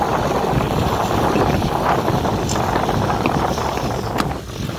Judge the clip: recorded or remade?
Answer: recorded